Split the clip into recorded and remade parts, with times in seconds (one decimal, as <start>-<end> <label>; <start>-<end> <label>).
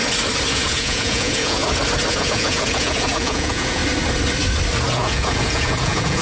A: 0.0-0.5 recorded; 0.5-1.6 remade; 1.6-2.1 recorded; 2.1-3.8 remade; 3.8-4.9 recorded; 4.9-6.2 remade